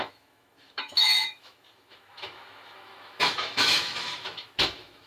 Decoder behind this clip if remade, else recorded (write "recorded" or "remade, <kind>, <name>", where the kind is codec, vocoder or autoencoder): remade, autoencoder, DAC-VAE